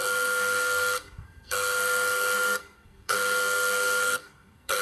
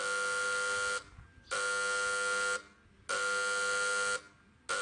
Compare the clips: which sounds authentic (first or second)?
second